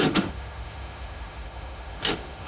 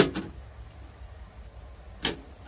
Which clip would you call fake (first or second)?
first